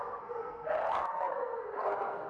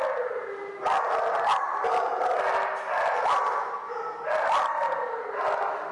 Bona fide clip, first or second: second